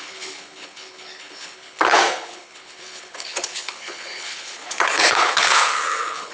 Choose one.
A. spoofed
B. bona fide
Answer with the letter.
A